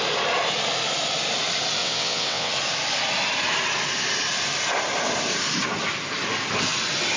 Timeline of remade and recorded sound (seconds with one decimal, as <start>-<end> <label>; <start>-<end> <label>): 0.0-1.8 recorded; 1.8-2.5 remade; 2.5-7.2 recorded